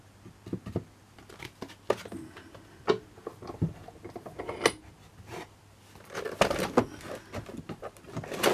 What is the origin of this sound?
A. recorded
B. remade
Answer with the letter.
A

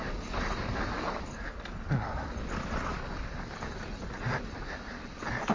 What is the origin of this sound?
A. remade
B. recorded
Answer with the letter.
B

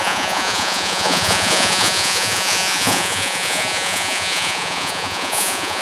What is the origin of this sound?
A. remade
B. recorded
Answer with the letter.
A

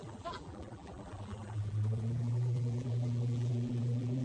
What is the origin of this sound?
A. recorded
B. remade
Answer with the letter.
B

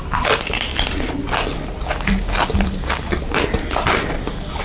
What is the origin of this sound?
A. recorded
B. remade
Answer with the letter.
A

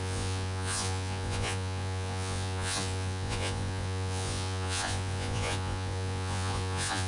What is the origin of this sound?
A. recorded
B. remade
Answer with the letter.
B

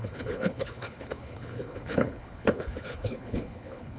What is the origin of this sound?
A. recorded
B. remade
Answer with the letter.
B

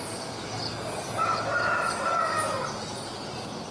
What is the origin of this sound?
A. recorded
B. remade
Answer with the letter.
A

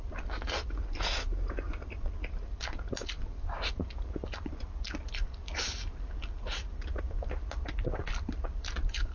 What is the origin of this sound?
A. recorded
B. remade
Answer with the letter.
A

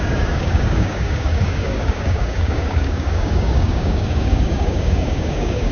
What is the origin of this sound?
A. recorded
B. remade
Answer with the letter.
B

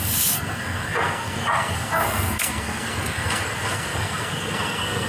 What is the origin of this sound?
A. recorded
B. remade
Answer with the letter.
B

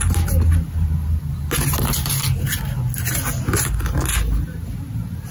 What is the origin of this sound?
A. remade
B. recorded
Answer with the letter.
B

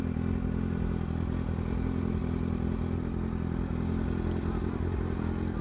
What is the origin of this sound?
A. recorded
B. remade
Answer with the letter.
A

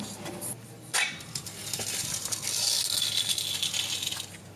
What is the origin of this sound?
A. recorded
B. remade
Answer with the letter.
A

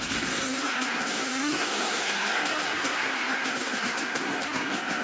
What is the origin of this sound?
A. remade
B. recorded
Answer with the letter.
A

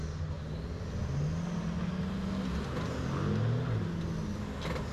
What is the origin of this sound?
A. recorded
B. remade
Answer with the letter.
A